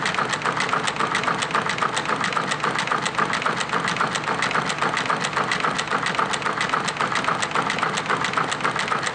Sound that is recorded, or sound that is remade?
recorded